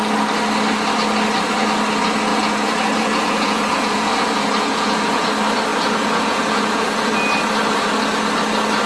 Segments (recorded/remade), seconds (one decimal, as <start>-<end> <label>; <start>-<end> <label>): 0.0-2.3 recorded; 2.3-5.3 remade; 5.3-5.7 recorded; 5.7-7.1 remade; 7.1-8.9 recorded